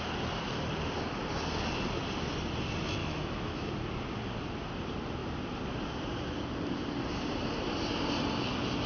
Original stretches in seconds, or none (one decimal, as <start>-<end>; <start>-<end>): 0.0-3.0; 3.7-8.9